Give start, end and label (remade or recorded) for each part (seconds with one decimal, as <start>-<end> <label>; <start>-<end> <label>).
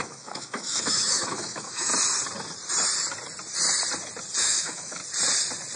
0.0-1.9 remade; 1.9-4.4 recorded; 4.4-5.0 remade; 5.0-5.8 recorded